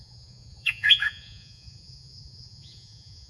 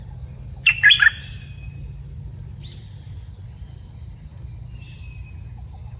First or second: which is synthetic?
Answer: first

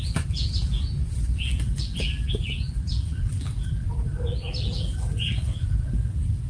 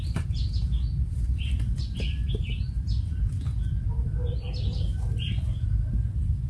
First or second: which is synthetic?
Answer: first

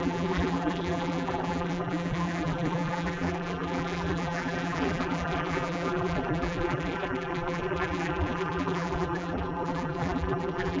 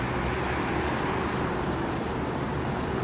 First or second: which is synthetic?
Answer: first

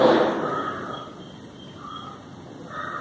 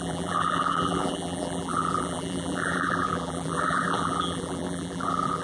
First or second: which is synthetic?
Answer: second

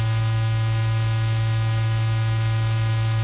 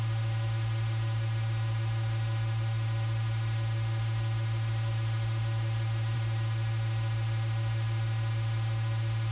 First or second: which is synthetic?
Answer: second